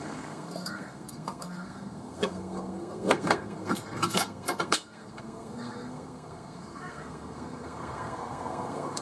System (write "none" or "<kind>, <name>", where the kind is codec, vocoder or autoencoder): codec, SNAC